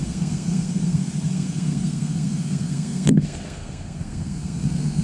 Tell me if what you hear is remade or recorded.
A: remade